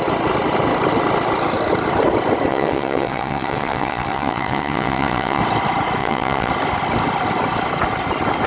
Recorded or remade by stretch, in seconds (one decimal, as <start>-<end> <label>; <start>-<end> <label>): 0.0-2.5 recorded; 2.5-5.4 remade; 5.4-6.0 recorded; 6.0-6.5 remade; 6.5-8.5 recorded